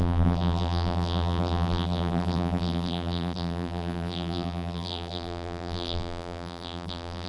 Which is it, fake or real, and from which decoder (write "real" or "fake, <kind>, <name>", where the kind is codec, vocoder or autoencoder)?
fake, vocoder, BigVGAN v2